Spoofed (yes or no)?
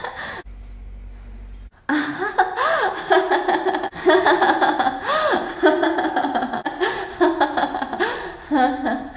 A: no